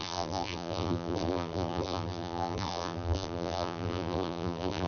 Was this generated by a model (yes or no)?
yes